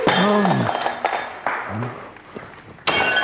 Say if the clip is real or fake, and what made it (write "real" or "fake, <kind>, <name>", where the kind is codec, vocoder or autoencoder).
real